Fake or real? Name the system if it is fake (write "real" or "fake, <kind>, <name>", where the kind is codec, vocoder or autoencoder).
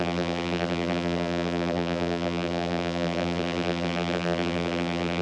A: fake, vocoder, BigVGAN v2